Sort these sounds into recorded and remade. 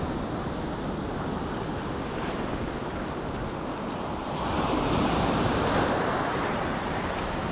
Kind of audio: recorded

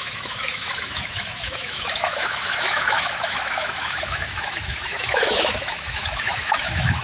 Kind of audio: remade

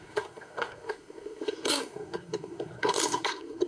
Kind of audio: remade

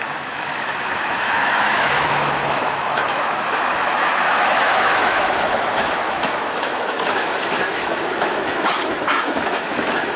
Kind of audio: remade